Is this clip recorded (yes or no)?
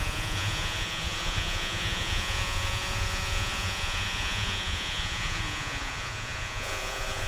no